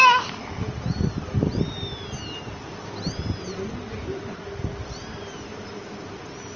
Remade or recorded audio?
recorded